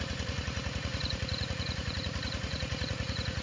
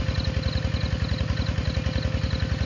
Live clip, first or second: second